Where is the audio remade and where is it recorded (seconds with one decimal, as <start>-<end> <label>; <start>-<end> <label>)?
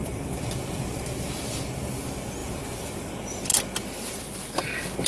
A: 0.0-1.3 remade; 1.3-2.4 recorded; 2.4-3.1 remade; 3.1-5.1 recorded